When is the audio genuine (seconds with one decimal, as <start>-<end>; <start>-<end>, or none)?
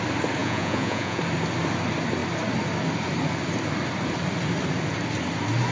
0.0-0.4; 1.2-5.7